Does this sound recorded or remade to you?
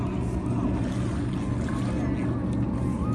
recorded